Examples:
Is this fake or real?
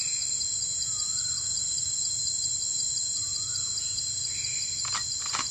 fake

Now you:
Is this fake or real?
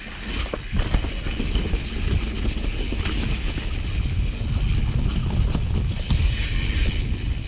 real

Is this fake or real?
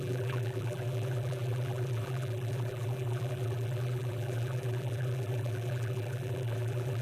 fake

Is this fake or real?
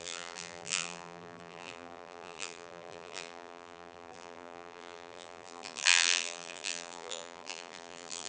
fake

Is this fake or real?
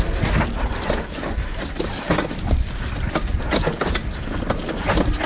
real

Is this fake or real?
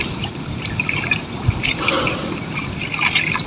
fake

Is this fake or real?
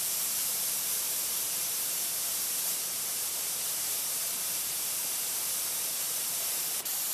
fake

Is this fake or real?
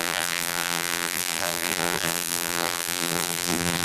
fake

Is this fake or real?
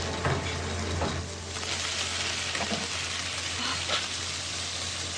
real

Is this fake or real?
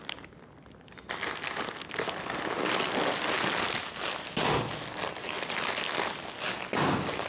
real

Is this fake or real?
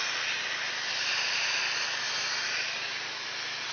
real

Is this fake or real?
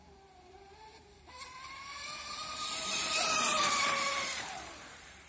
fake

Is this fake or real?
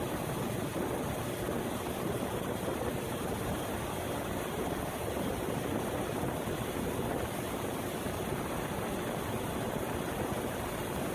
real